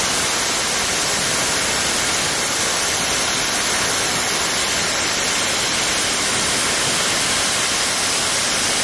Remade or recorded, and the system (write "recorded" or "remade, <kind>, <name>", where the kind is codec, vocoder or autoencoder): recorded